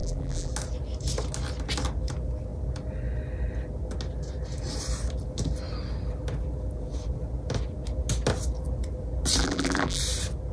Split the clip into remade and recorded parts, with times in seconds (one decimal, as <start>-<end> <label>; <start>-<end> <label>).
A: 0.0-0.5 remade; 0.5-9.4 recorded; 9.4-10.0 remade; 10.0-10.5 recorded